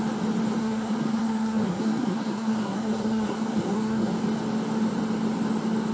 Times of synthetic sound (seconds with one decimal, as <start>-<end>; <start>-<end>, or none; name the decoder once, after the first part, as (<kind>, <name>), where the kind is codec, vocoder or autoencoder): 0.6-4.1 (codec, SNAC)